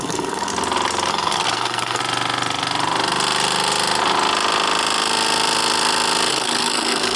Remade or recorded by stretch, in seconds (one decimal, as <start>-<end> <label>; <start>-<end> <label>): 0.0-0.5 remade; 0.5-1.1 recorded; 1.1-2.0 remade; 2.0-6.3 recorded; 6.3-7.2 remade